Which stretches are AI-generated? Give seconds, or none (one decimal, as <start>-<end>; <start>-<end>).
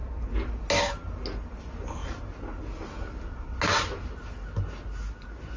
none